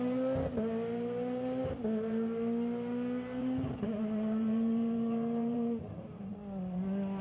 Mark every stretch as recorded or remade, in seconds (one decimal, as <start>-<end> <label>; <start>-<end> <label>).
0.0-3.4 recorded; 3.4-6.3 remade; 6.3-7.2 recorded